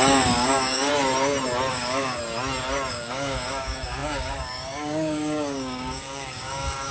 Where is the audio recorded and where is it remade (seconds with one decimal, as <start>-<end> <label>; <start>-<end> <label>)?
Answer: 0.0-0.9 remade; 0.9-1.7 recorded; 1.7-2.2 remade; 2.2-2.9 recorded; 2.9-6.9 remade